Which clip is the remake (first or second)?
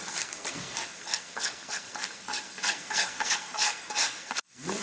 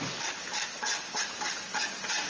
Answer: first